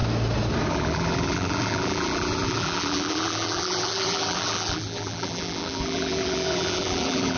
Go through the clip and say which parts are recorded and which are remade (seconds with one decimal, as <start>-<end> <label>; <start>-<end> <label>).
0.0-0.7 recorded; 0.7-7.4 remade